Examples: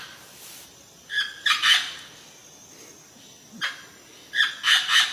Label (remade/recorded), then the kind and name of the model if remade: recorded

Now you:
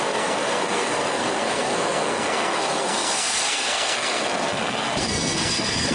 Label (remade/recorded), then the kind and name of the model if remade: remade, codec, SNAC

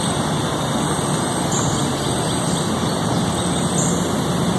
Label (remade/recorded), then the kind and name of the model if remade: recorded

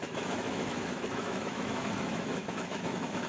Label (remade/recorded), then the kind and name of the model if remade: remade, autoencoder, DAC-VAE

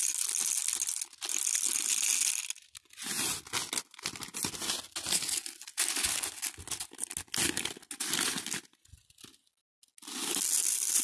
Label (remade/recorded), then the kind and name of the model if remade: recorded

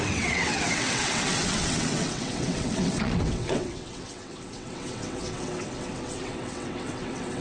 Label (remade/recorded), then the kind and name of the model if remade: remade, vocoder, WaveNeXt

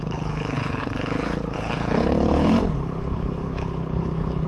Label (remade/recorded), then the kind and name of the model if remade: remade, codec, HILCodec